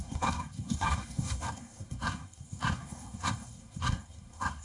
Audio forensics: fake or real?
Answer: fake